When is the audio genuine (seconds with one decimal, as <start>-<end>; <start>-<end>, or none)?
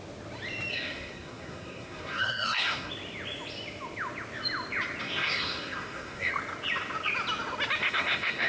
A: 0.0-0.7; 2.9-5.0; 6.3-7.8